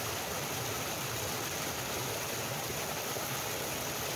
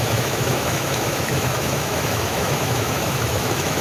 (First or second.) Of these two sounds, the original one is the first